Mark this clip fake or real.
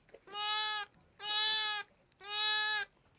real